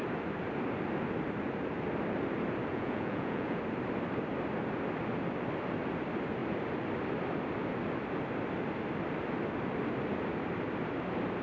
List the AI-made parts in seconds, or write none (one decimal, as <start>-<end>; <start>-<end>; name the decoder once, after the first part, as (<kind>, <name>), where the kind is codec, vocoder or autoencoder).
2.7-3.6 (vocoder, Vocos)